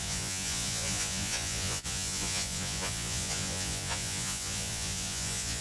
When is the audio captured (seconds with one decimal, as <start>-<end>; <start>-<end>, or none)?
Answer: none